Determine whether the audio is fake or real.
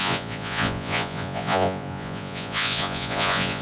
fake